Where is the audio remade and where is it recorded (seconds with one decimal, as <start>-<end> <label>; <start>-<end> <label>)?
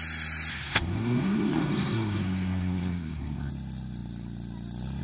0.0-0.5 recorded; 0.5-3.5 remade; 3.5-5.0 recorded